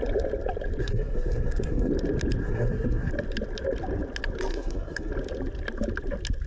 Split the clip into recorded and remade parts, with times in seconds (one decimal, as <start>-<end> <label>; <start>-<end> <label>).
0.0-0.8 recorded; 0.8-1.9 remade; 1.9-2.4 recorded; 2.4-3.1 remade; 3.1-4.5 recorded; 4.5-5.1 remade; 5.1-6.5 recorded